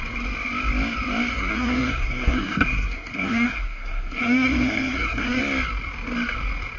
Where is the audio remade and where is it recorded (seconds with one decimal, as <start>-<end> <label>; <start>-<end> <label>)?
0.0-1.3 recorded; 1.3-5.4 remade; 5.4-6.8 recorded